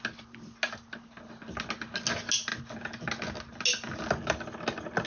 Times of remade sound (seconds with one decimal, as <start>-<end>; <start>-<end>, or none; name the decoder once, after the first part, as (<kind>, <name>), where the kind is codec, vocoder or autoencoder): none